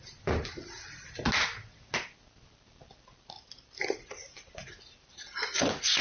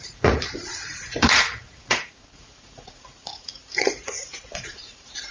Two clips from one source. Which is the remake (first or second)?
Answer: second